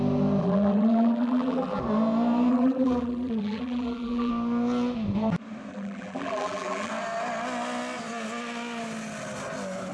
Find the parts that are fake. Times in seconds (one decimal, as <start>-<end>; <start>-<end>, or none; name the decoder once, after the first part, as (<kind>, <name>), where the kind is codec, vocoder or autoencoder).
0.4-1.8 (vocoder, BigVGAN v2); 2.5-4.3; 5.7-6.9